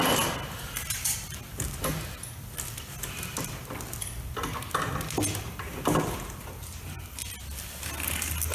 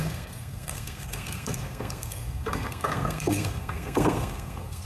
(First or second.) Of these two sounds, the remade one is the second